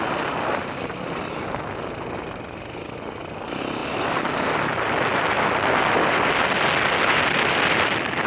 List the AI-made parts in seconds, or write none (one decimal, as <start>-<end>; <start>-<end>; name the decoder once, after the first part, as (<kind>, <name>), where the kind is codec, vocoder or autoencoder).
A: none